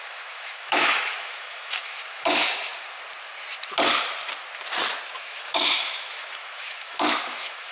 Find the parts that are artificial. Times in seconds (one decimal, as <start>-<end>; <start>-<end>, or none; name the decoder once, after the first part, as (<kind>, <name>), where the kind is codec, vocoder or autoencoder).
0.0-2.7 (autoencoder, DAC-VAE); 5.4-7.7